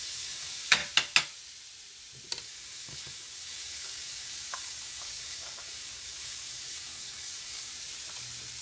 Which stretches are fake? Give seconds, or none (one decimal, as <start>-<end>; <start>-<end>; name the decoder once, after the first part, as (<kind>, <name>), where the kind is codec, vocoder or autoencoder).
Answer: 0.0-0.8 (codec, DAC); 2.4-7.7